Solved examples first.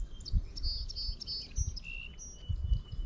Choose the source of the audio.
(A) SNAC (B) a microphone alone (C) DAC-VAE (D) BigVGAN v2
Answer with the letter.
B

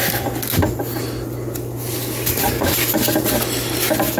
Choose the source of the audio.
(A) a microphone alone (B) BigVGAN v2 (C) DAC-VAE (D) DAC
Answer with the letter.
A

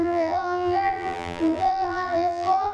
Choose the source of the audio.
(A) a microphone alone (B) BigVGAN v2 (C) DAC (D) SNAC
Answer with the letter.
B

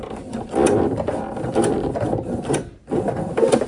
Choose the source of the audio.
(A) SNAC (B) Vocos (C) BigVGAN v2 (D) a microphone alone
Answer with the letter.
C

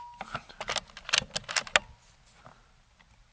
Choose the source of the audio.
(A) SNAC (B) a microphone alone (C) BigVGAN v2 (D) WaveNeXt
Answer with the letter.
B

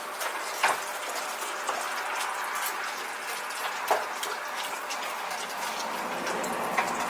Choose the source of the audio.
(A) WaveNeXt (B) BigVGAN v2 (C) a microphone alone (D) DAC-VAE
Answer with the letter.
C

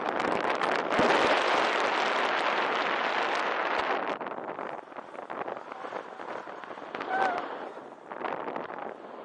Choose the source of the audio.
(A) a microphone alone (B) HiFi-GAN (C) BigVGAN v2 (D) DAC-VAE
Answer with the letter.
A